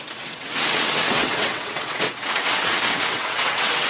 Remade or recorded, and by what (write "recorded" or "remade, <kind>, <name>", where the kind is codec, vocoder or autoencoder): remade, vocoder, WaveNeXt